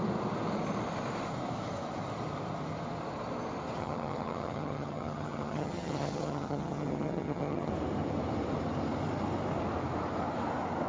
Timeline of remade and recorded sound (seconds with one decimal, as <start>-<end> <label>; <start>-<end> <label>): 0.0-3.8 recorded; 3.8-7.7 remade; 7.7-10.9 recorded